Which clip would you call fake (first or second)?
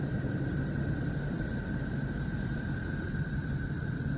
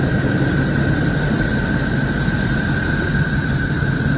first